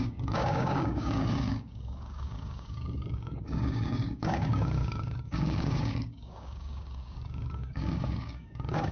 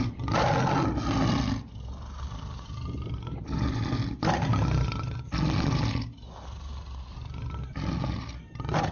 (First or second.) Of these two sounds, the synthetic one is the first